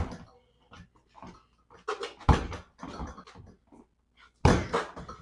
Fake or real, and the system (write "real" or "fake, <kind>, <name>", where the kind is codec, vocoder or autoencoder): real